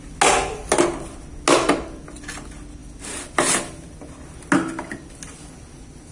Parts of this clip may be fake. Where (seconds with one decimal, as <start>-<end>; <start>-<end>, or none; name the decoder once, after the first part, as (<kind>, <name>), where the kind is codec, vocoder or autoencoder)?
none